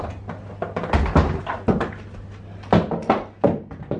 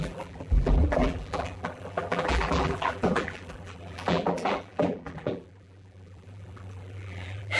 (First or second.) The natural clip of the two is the first